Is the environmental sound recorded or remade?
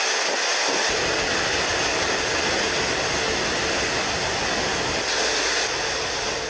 recorded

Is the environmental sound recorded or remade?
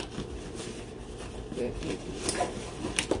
recorded